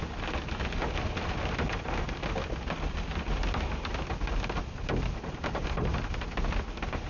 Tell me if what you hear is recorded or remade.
recorded